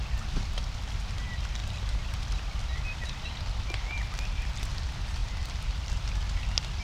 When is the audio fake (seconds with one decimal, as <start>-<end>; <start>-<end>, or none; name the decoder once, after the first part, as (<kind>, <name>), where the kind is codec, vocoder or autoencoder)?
1.6-2.2 (vocoder, BigVGAN v2); 5.2-5.9